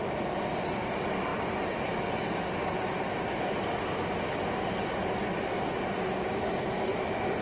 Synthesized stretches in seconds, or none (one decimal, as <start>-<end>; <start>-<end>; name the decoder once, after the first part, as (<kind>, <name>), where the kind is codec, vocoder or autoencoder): none